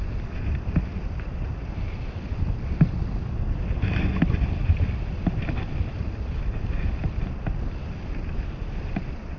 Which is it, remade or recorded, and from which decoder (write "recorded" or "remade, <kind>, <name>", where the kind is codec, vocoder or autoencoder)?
recorded